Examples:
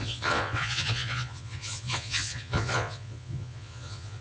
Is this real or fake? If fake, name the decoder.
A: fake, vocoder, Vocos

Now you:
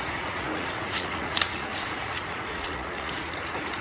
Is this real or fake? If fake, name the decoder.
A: fake, vocoder, Vocos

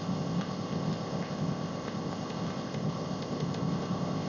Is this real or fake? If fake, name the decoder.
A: fake, codec, ZipCodec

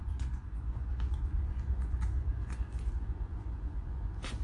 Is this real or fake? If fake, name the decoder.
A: fake, vocoder, Vocos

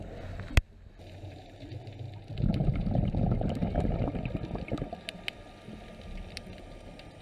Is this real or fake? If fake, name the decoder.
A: real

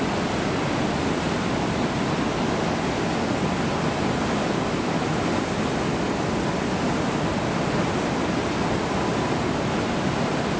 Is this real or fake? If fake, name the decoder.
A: real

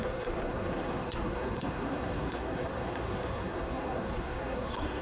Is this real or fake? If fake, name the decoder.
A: fake, codec, SNAC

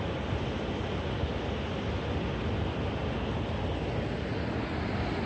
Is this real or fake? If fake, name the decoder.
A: real